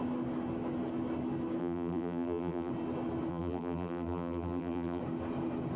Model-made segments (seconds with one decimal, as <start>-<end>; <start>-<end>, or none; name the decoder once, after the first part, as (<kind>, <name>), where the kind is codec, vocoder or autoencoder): 1.6-2.7 (vocoder, BigVGAN v2); 3.3-5.0